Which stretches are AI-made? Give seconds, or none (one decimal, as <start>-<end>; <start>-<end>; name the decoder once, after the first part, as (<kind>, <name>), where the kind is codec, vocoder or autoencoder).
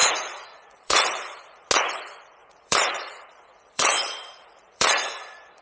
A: 0.0-1.7 (vocoder, Vocos); 2.4-5.6